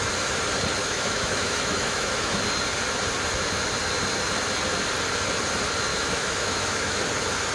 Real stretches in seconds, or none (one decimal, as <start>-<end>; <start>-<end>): 0.0-0.8; 2.4-5.9; 7.0-7.5